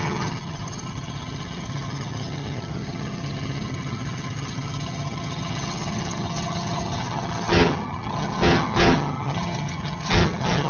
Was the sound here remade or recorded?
remade